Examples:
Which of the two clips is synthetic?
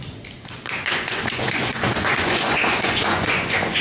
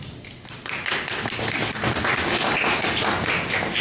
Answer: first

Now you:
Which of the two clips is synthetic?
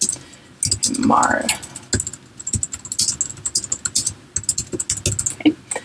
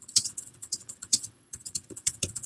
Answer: second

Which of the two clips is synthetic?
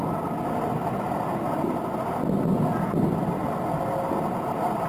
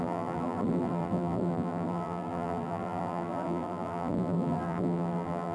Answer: second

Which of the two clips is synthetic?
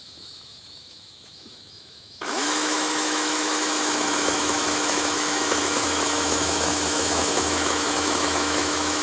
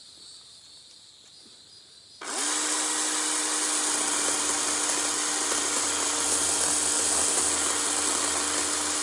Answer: first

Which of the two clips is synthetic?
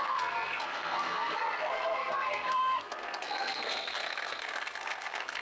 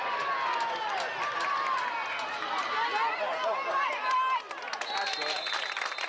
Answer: first